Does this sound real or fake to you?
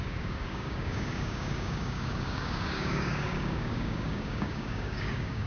fake